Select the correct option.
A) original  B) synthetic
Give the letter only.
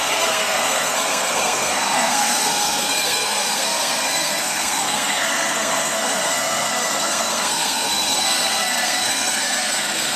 B